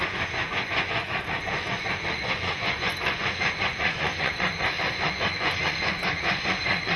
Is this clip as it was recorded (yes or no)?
no